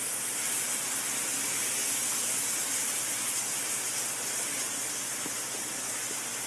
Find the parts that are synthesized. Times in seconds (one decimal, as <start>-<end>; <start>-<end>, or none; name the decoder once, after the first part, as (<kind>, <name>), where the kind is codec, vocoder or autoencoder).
none